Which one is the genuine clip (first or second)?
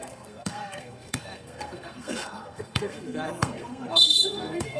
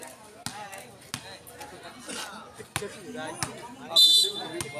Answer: second